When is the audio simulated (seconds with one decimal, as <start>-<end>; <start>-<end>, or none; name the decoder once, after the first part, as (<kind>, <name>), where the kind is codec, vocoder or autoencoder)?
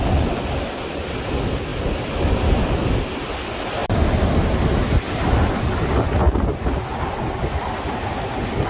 3.8-5.5 (vocoder, BigVGAN v2)